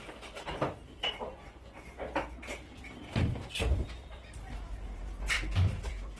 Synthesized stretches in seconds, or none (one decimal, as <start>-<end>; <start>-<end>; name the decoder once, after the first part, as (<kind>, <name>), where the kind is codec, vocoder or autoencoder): 1.3-2.4 (vocoder, Vocos)